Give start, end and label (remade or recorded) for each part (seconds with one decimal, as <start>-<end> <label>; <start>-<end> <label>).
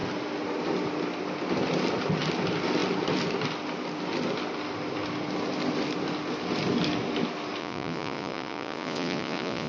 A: 0.0-7.6 recorded; 7.6-9.7 remade